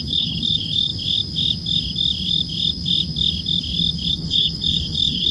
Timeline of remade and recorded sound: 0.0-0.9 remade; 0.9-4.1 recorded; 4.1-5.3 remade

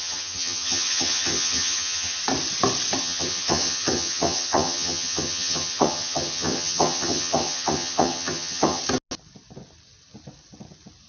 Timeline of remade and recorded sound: 0.0-2.2 remade; 2.2-3.0 recorded; 3.0-8.8 remade; 8.8-11.1 recorded

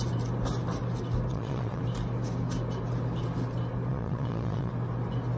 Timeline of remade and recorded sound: 0.0-1.3 recorded; 1.3-1.8 remade; 1.8-3.9 recorded; 3.9-4.7 remade; 4.7-5.4 recorded

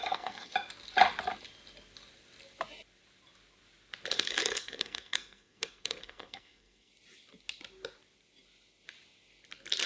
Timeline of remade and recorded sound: 0.0-0.5 remade; 0.5-4.1 recorded; 4.1-6.9 remade; 6.9-9.9 recorded